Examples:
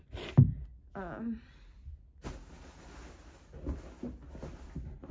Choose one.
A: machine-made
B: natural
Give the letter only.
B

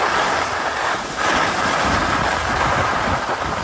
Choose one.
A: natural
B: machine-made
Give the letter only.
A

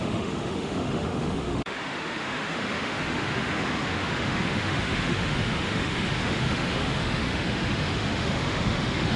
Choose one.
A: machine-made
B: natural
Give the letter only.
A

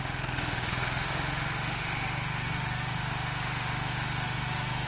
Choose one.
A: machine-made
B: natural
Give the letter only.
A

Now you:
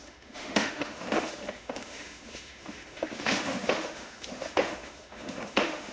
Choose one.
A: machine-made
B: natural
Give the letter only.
A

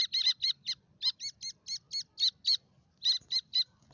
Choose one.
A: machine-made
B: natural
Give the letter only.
B